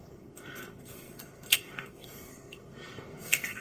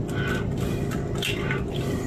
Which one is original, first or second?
second